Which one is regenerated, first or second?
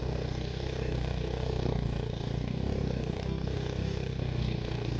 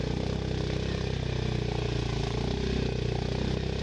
first